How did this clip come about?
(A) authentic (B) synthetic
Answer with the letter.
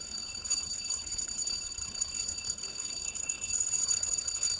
B